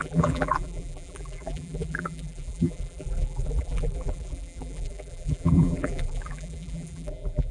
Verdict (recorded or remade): remade